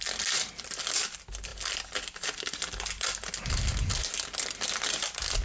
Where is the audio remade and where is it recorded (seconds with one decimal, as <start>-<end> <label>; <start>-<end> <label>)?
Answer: 0.0-5.4 recorded